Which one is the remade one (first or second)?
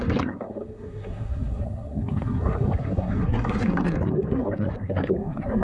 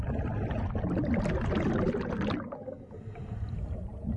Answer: first